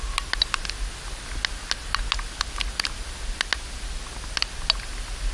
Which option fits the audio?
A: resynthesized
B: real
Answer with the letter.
B